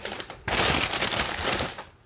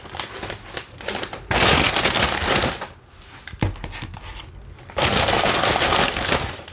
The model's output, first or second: first